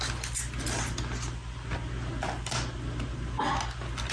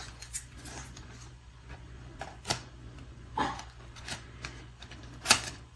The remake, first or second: second